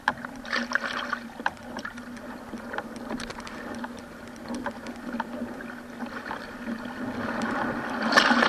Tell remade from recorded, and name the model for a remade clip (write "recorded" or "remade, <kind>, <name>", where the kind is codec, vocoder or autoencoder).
recorded